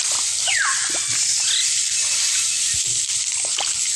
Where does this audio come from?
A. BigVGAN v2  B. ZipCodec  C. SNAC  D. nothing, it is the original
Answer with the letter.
D